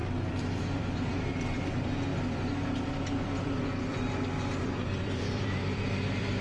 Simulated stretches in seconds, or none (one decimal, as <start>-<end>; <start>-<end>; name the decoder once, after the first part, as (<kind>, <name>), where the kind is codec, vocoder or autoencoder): 0.0-6.4 (vocoder, BigVGAN v2)